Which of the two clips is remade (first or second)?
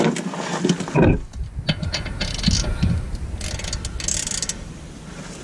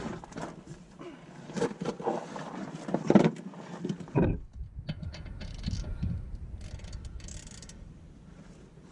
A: second